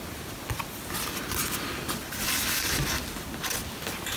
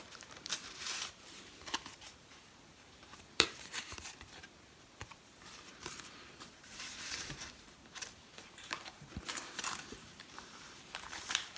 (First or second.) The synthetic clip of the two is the second